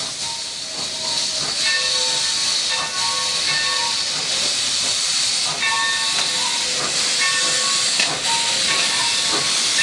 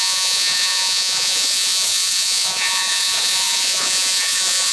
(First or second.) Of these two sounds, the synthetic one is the second